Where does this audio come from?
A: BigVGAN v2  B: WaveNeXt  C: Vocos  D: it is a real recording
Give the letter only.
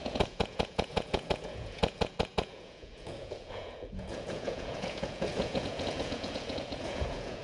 C